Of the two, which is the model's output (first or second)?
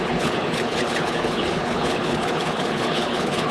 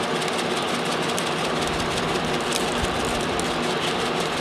first